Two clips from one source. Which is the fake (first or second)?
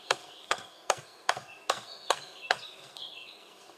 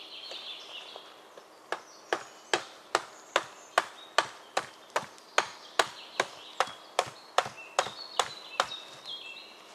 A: first